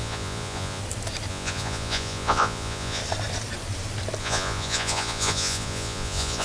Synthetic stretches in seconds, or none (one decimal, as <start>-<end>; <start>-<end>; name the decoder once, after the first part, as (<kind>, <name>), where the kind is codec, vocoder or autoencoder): 0.0-0.8 (vocoder, Vocos); 1.3-3.0; 4.2-6.4